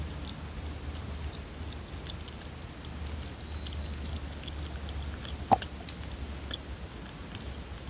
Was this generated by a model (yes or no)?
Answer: no